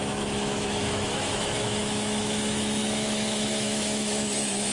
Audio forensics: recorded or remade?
remade